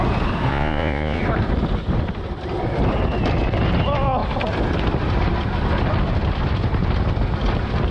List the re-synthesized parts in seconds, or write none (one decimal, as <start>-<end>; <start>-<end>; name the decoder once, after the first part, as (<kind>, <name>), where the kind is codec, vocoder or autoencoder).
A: 0.5-1.2 (vocoder, Vocos)